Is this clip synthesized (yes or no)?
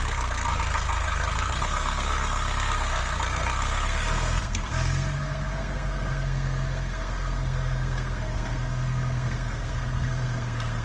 yes